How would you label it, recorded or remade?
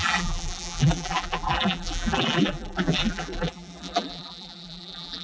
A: remade